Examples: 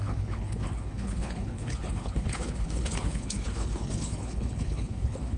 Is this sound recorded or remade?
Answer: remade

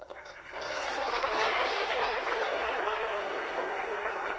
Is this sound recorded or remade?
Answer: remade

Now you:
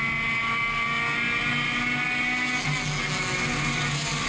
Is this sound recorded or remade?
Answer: recorded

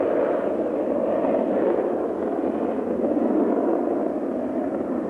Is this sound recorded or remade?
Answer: recorded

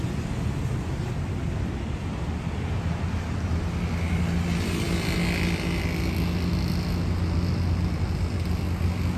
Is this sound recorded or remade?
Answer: recorded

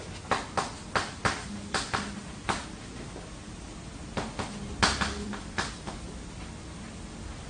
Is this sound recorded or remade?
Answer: recorded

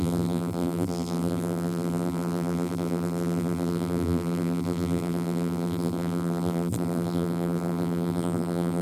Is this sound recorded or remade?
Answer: remade